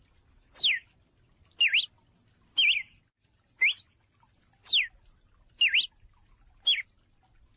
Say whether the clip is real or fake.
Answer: real